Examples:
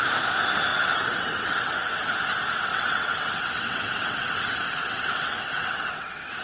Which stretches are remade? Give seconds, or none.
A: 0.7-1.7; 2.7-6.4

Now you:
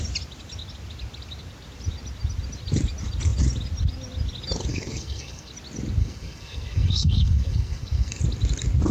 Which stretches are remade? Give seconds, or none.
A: 4.7-5.5; 6.0-8.2

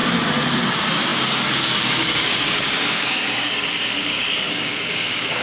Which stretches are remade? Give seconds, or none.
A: 0.7-5.4

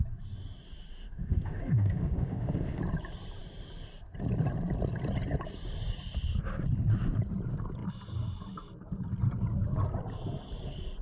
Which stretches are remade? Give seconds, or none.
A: 0.9-2.8

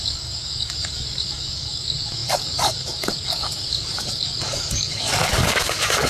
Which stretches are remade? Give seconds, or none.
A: 0.0-6.1